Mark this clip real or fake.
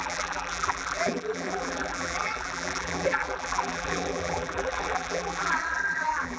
fake